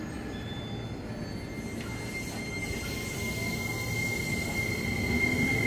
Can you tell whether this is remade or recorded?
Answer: recorded